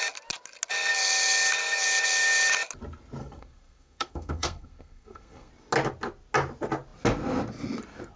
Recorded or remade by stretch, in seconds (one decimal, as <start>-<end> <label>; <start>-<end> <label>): 0.0-3.2 recorded; 3.2-5.5 remade; 5.5-8.2 recorded